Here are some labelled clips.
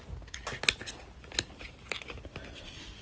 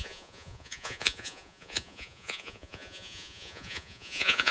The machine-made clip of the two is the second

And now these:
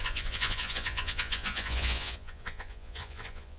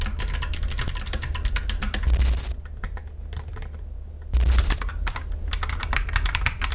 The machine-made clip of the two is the first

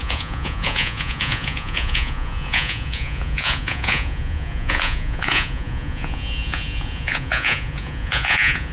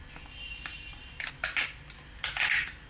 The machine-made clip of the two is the first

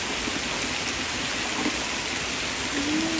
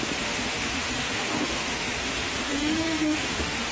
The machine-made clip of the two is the second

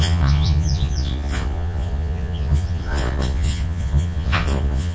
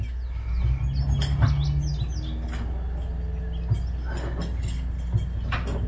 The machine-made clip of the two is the first